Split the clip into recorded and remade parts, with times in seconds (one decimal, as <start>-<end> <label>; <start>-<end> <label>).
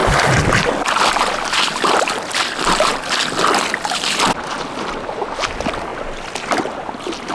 0.0-7.3 recorded